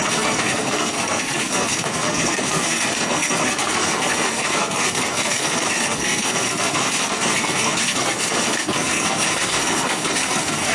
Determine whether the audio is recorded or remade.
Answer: remade